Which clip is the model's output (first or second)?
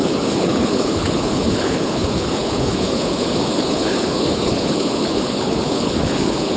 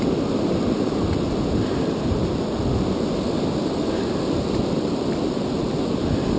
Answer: first